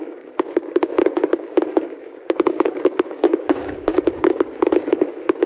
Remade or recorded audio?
remade